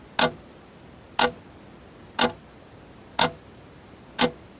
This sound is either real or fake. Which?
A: real